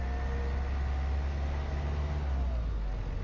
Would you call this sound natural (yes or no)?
yes